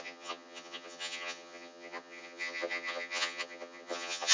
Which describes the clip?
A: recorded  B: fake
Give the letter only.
B